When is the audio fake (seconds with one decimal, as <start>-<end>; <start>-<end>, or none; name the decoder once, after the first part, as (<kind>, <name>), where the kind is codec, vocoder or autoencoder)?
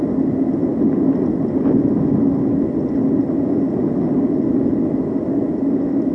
none